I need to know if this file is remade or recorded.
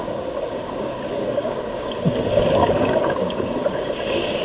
remade